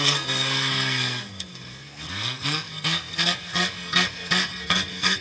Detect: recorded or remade remade